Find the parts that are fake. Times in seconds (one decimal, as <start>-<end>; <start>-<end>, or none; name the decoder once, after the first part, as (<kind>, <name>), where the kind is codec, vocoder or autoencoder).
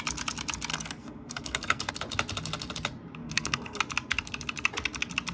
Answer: 0.7-1.9 (codec, SNAC); 3.2-3.8